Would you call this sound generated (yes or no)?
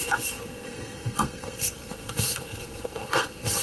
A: yes